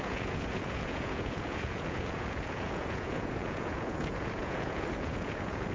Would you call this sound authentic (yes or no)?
no